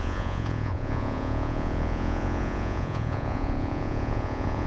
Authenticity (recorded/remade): remade